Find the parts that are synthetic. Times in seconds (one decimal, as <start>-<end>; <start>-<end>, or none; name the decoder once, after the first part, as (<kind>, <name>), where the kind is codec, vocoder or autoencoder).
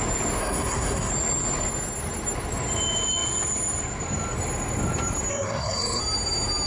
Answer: 0.4-1.1 (codec, SNAC); 5.3-6.0